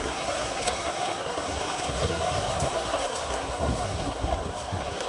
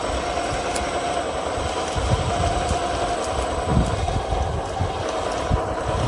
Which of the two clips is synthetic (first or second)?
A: first